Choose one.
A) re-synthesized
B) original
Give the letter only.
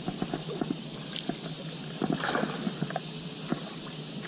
B